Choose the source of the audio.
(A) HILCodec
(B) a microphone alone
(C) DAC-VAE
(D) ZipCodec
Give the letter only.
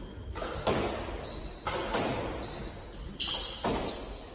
B